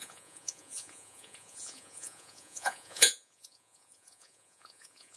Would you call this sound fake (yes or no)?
yes